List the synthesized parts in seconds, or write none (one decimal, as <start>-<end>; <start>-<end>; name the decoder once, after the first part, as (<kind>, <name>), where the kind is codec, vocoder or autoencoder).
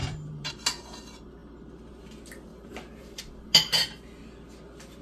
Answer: 0.0-0.5 (vocoder, BigVGAN v2); 2.5-3.2